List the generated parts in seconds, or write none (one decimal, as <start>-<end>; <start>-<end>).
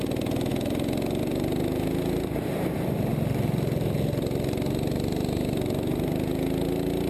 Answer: none